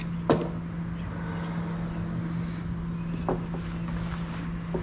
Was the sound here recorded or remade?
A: recorded